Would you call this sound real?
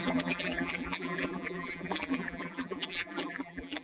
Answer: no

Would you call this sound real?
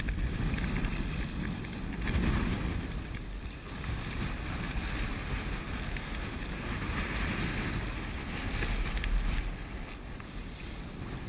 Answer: yes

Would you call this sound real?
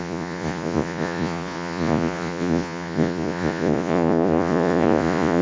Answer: no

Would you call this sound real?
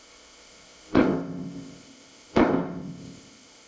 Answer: no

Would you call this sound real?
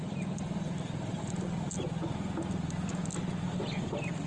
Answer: yes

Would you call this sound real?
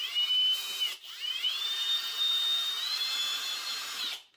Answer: no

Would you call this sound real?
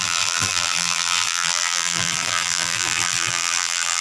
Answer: no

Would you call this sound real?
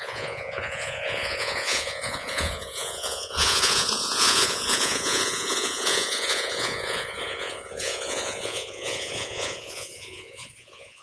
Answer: no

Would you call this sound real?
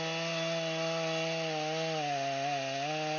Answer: yes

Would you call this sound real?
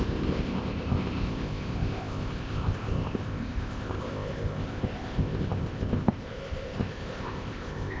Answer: no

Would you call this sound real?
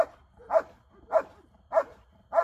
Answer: yes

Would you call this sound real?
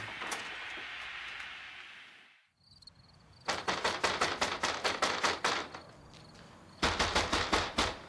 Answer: yes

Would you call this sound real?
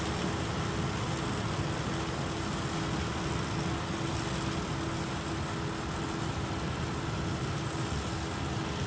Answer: yes